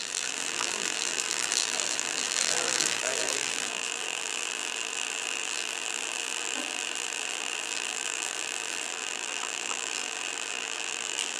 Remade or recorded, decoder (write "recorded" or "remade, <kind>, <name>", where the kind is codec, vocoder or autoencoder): remade, vocoder, BigVGAN v2